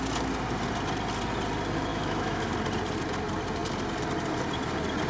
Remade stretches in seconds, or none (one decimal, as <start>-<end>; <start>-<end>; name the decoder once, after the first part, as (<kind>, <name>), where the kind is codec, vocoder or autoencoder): 1.9-2.5 (autoencoder, DAC-VAE)